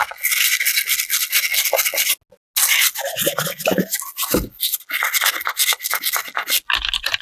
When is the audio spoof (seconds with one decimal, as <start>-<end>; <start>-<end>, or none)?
none